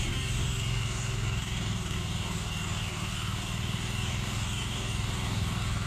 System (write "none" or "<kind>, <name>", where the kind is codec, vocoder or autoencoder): codec, DAC